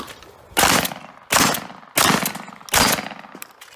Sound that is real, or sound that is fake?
real